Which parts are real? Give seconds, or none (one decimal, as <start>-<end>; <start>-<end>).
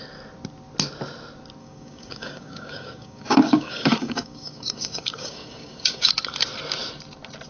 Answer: 0.0-1.6; 6.1-7.5